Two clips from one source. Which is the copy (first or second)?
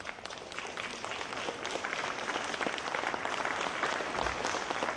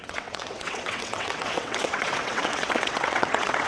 second